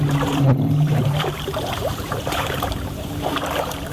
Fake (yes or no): yes